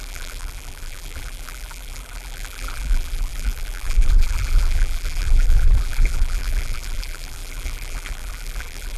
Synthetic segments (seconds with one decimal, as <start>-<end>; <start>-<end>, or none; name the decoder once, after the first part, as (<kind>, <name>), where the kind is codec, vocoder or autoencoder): 0.0-9.0 (vocoder, BigVGAN v2)